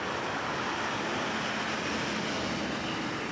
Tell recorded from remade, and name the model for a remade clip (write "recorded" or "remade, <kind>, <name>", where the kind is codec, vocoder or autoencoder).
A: recorded